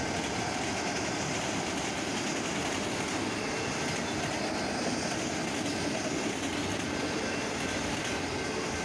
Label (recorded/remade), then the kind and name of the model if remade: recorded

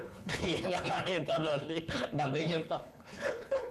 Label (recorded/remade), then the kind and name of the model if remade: remade, codec, HILCodec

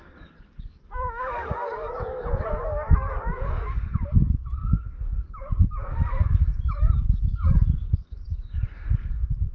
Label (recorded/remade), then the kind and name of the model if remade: remade, codec, DAC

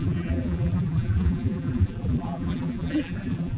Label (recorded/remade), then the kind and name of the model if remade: remade, vocoder, BigVGAN v2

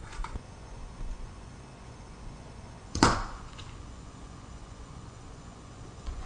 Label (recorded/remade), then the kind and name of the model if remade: remade, vocoder, Vocos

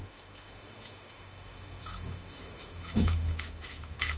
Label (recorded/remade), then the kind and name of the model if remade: remade, autoencoder, DAC-VAE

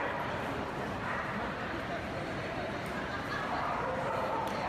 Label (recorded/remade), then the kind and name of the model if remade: remade, vocoder, BigVGAN v2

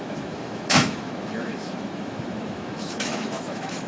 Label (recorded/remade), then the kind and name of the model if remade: remade, autoencoder, DAC-VAE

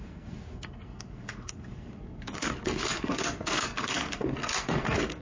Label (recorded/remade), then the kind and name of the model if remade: remade, codec, SNAC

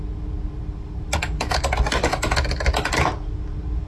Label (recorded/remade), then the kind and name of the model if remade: recorded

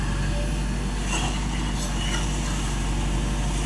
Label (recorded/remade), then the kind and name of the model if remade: recorded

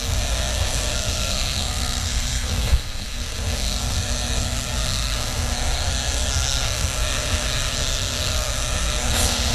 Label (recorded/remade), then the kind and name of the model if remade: remade, codec, SNAC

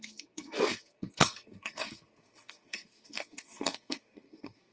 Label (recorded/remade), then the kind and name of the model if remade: remade, codec, SNAC